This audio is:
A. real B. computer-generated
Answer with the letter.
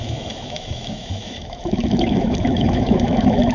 B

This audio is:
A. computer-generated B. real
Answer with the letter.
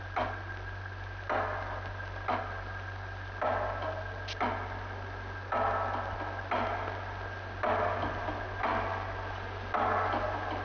B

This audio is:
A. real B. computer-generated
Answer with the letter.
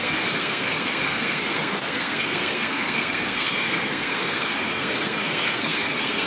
B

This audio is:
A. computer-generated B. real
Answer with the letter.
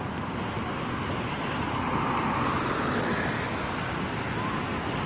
B